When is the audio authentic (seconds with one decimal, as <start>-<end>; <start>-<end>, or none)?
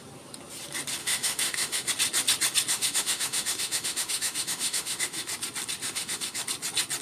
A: 0.0-1.0; 1.9-2.7; 5.3-5.8; 6.4-7.0